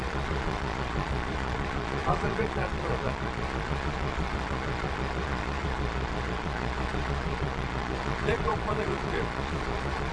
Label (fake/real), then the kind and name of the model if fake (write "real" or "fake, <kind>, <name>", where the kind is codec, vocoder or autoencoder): fake, vocoder, Vocos